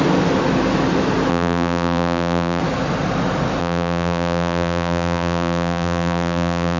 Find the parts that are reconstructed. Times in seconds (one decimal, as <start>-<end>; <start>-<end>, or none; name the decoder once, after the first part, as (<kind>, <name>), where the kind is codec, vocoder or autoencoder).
1.3-2.6 (vocoder, BigVGAN v2); 3.6-6.8